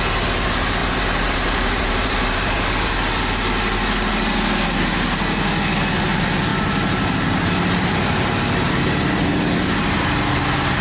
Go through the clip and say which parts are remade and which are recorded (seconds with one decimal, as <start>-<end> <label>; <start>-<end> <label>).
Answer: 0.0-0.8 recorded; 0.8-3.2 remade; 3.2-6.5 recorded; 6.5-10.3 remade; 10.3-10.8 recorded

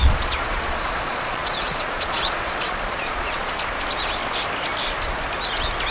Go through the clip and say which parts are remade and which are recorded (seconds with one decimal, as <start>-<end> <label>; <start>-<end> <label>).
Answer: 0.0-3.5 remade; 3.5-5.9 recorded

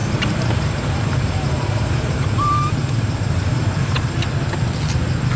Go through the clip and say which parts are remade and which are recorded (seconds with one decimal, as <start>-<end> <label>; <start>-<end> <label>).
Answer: 0.0-4.2 remade; 4.2-5.4 recorded